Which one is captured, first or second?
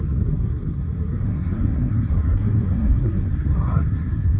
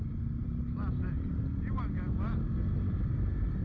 second